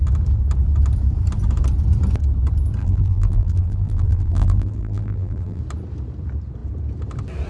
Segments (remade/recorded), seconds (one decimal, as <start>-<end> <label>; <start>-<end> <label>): 0.0-2.8 recorded; 2.8-5.6 remade; 5.6-7.5 recorded